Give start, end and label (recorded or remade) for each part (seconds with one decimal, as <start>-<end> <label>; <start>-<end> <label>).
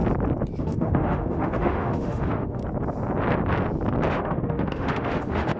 0.0-0.6 recorded; 0.6-2.6 remade; 2.6-4.1 recorded; 4.1-5.6 remade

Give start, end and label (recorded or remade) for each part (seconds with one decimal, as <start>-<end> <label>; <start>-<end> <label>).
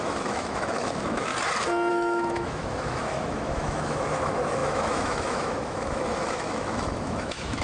0.0-1.3 remade; 1.3-1.9 recorded; 1.9-7.6 remade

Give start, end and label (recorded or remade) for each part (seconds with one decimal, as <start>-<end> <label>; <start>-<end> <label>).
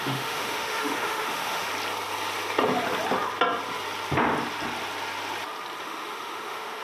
0.0-1.7 remade; 1.7-5.8 recorded; 5.8-6.8 remade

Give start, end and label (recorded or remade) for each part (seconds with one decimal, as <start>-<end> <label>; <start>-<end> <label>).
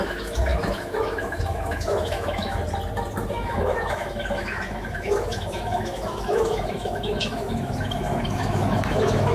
0.0-2.6 remade; 2.6-3.3 recorded; 3.3-9.3 remade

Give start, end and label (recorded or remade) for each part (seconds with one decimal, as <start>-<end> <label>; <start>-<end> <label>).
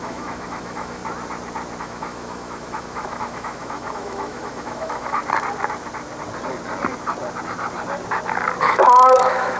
0.0-1.0 remade; 1.0-1.8 recorded; 1.8-5.2 remade; 5.2-8.6 recorded; 8.6-9.6 remade